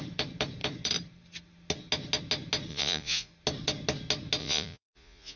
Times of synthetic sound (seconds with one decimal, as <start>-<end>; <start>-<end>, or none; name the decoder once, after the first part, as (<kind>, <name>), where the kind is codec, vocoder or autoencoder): 2.7-3.3 (vocoder, Vocos); 4.4-5.4

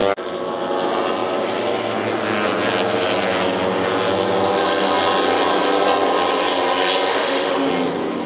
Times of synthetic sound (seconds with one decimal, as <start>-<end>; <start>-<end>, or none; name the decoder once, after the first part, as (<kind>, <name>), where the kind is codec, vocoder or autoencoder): 7.1-7.7 (autoencoder, DAC-VAE)

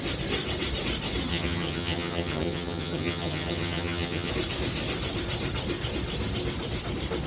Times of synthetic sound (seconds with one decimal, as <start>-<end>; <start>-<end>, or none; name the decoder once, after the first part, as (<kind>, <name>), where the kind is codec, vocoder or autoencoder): 1.3-4.3 (vocoder, HiFi-GAN)

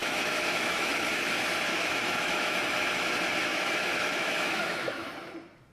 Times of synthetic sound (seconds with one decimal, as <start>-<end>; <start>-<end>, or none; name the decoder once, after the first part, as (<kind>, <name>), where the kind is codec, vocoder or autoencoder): 0.0-1.2 (autoencoder, DAC-VAE); 1.7-2.6; 3.5-5.1

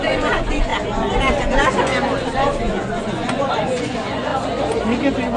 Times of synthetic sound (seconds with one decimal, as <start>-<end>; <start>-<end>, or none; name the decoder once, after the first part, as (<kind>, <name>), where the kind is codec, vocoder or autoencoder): 0.0-0.7 (vocoder, Vocos); 1.4-1.9; 2.6-4.3

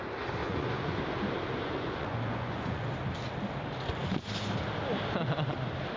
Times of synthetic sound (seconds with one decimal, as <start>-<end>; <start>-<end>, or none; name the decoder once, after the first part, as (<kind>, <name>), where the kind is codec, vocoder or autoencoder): 0.4-1.0 (vocoder, Vocos); 1.6-2.9